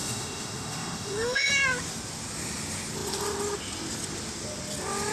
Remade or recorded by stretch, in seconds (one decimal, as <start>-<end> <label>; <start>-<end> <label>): 0.0-1.5 remade; 1.5-5.1 recorded